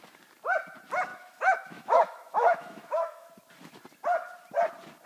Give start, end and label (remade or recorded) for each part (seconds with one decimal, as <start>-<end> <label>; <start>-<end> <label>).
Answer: 0.0-1.1 recorded; 1.1-3.3 remade; 3.3-5.1 recorded

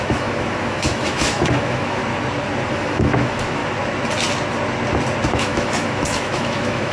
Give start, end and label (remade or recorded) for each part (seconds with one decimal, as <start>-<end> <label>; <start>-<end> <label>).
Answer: 0.0-2.0 remade; 2.0-2.7 recorded; 2.7-3.6 remade; 3.6-5.3 recorded; 5.3-6.9 remade

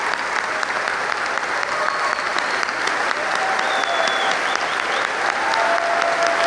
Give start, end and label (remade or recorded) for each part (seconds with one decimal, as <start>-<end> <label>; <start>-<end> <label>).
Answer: 0.0-6.5 recorded